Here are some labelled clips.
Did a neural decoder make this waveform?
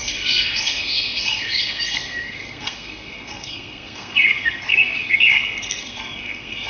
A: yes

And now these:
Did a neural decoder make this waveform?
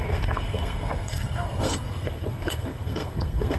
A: yes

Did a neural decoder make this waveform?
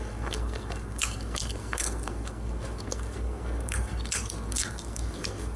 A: yes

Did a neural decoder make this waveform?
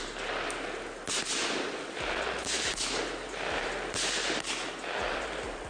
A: no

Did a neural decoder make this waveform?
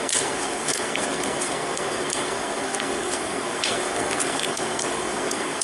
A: yes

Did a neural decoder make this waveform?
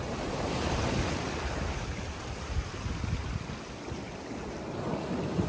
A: no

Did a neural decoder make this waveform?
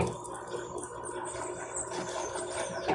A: no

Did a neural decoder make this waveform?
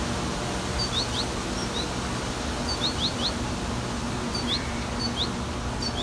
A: no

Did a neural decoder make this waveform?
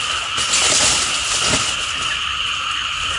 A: no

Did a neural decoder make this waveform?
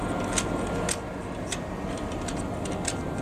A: no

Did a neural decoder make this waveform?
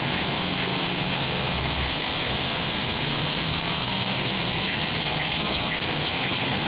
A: yes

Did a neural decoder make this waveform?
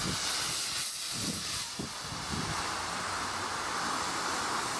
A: no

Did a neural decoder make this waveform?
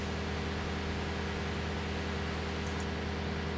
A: no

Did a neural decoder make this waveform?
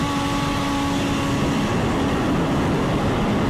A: no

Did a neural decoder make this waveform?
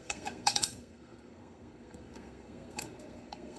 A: yes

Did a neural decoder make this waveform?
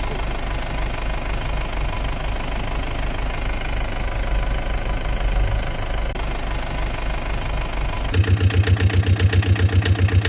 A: no